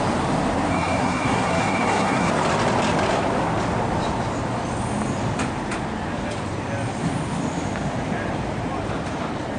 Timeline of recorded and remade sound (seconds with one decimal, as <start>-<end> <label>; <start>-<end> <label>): 0.0-0.7 recorded; 0.7-2.3 remade; 2.3-9.6 recorded